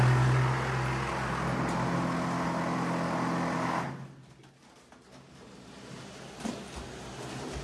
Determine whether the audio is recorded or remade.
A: recorded